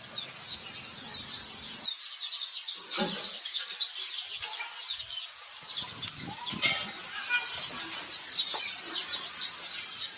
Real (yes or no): yes